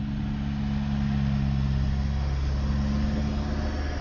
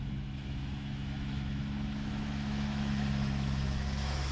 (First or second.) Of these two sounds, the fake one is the second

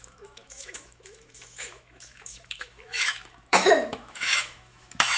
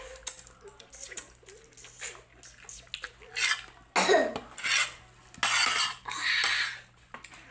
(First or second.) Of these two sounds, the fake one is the first